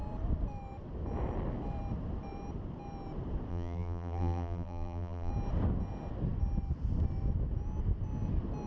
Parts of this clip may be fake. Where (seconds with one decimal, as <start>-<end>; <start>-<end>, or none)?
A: 3.5-5.3